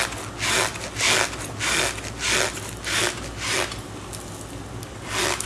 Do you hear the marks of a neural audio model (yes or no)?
no